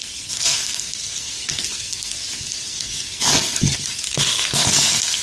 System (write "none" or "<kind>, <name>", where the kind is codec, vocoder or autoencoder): codec, SNAC